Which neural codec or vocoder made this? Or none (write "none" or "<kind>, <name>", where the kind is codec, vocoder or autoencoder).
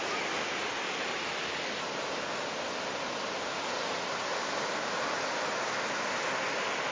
none